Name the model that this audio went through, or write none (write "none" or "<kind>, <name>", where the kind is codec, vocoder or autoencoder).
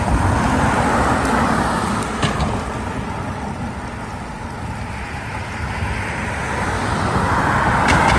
none